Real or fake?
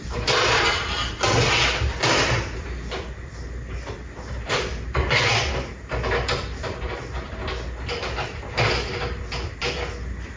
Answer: fake